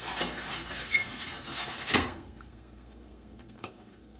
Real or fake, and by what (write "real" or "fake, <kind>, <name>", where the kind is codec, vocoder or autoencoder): fake, codec, SNAC